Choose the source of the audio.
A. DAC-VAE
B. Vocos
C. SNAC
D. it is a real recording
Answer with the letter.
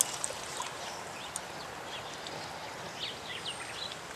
D